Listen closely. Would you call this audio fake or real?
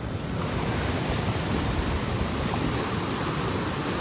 real